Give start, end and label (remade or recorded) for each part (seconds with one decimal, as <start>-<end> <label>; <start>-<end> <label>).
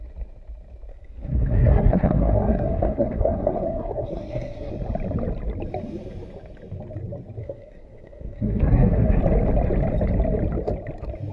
0.0-0.9 recorded; 0.9-4.7 remade; 4.7-7.4 recorded; 7.4-9.2 remade; 9.2-11.3 recorded